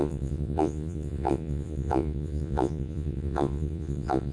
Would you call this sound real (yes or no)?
no